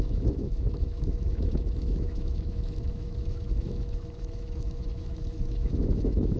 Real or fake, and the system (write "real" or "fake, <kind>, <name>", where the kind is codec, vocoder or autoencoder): fake, autoencoder, DAC-VAE